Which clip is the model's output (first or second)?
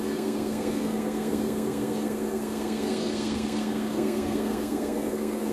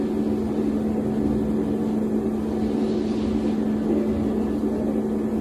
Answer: first